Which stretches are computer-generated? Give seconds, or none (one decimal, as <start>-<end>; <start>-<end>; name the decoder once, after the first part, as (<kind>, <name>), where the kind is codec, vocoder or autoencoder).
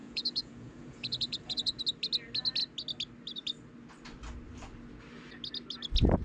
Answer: 0.0-1.8 (vocoder, Vocos)